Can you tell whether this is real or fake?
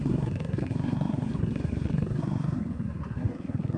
fake